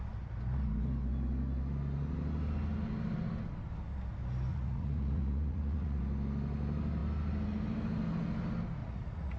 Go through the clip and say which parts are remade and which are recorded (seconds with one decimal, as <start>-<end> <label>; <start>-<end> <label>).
0.0-4.5 recorded; 4.5-6.0 remade; 6.0-8.8 recorded; 8.8-9.4 remade